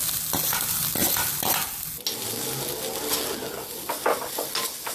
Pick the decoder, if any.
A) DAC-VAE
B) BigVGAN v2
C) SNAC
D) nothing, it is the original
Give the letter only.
D